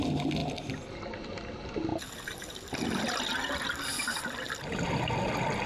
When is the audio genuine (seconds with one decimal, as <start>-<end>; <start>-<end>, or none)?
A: 0.0-5.7